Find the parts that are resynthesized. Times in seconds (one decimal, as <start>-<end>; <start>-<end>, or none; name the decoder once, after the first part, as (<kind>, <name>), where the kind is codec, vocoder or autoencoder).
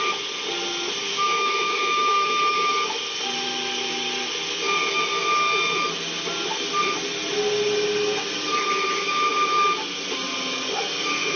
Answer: 1.1-2.7 (autoencoder, DAC-VAE)